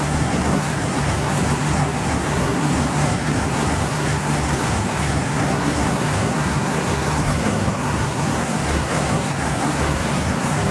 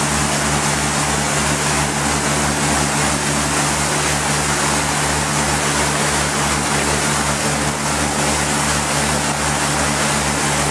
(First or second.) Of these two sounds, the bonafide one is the second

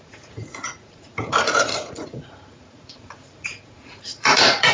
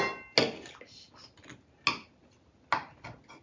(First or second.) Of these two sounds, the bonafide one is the second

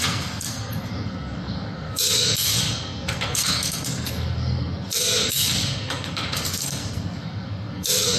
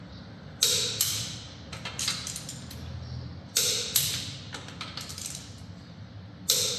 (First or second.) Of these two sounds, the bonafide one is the second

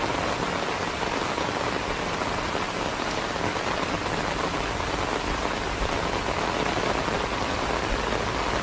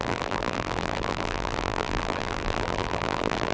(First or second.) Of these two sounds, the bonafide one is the first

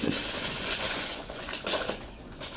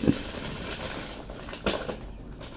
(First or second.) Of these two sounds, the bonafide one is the second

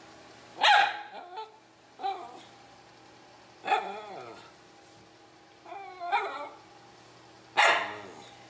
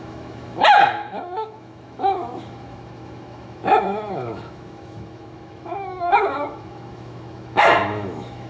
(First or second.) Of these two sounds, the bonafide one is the first